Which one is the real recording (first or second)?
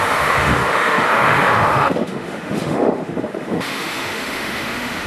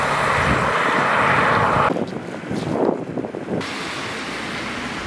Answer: second